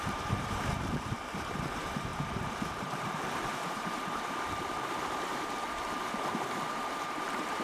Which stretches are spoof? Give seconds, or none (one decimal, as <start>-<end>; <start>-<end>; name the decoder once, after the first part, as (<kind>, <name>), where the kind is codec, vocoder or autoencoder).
0.0-7.6 (vocoder, BigVGAN v2)

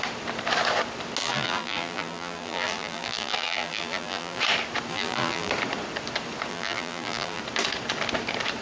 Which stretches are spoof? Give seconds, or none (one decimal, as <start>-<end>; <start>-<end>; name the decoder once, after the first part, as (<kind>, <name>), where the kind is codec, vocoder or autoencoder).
1.2-4.4 (vocoder, BigVGAN v2); 4.9-5.5; 6.5-7.4

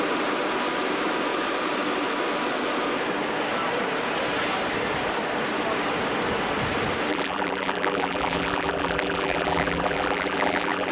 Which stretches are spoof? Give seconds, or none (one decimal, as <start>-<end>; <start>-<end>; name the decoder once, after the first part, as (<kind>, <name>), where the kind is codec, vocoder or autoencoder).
7.1-10.9 (vocoder, BigVGAN v2)

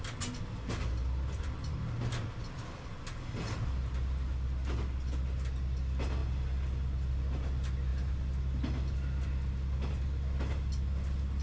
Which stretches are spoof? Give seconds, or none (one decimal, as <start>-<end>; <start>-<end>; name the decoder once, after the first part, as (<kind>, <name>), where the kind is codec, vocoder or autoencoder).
none

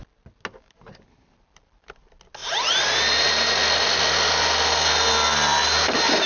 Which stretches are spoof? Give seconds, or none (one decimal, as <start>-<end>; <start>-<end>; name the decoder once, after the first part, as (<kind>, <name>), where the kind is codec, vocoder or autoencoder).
none